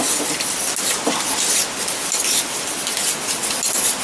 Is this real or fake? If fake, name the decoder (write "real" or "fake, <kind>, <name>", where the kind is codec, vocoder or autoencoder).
real